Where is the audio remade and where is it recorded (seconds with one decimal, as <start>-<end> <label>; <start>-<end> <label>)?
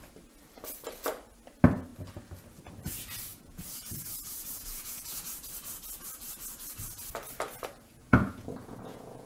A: 0.0-3.3 recorded; 3.3-5.3 remade; 5.3-8.0 recorded; 8.0-9.3 remade